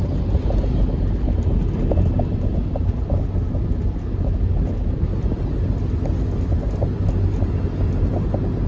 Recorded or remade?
recorded